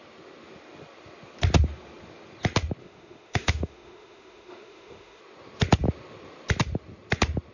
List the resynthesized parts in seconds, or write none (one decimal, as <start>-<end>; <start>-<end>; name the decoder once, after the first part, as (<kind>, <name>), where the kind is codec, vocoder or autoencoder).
2.8-5.2 (autoencoder, DAC-VAE)